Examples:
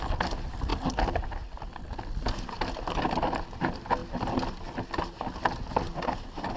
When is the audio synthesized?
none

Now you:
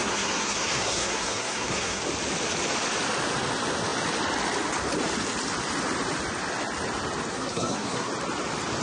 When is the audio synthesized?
0.0-2.0 (codec, SNAC); 7.3-8.1

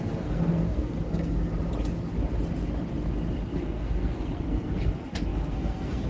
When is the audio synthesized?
0.0-1.5 (codec, SNAC); 3.5-6.1

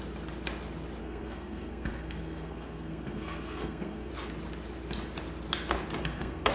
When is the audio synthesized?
1.0-4.1 (codec, SNAC); 6.0-6.5

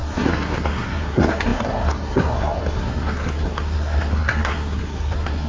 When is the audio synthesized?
0.0-5.5 (codec, SNAC)

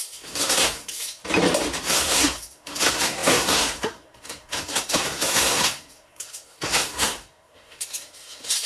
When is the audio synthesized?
0.0-1.2 (codec, SNAC); 1.8-8.7

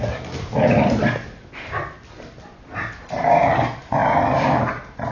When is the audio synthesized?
none